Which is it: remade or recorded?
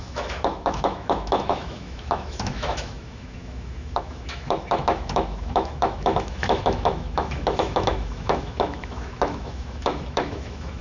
remade